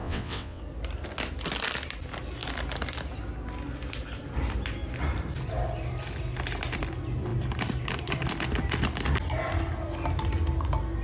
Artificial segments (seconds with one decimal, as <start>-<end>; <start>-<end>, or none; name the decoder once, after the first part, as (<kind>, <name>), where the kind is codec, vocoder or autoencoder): 0.0-0.6 (vocoder, WaveNeXt)